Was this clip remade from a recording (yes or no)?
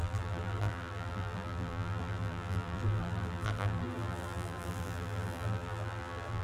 yes